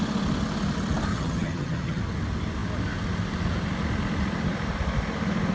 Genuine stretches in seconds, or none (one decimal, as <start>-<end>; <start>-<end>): 0.0-1.1; 2.0-5.5